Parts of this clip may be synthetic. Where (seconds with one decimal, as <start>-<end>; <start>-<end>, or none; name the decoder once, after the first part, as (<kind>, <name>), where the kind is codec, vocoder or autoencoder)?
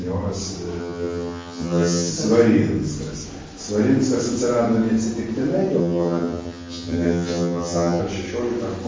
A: 0.8-2.1 (vocoder, HiFi-GAN); 5.8-8.0